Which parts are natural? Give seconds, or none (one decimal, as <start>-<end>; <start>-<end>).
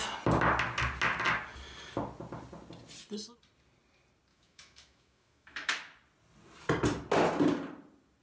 0.0-4.3; 5.7-8.2